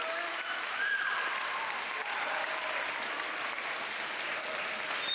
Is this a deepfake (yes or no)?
no